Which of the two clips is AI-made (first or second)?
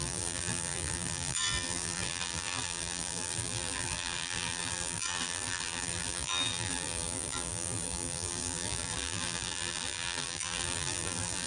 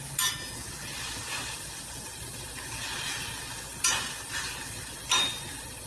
first